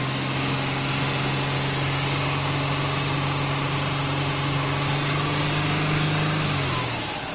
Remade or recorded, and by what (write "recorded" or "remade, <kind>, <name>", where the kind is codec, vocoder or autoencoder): recorded